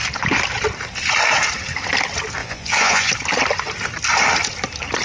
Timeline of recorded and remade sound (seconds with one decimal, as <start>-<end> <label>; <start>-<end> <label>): 0.0-2.4 recorded; 2.4-3.1 remade; 3.1-5.0 recorded